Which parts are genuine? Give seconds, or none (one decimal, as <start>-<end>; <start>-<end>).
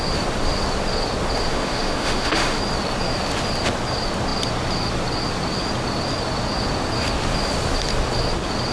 0.0-1.5; 2.6-8.7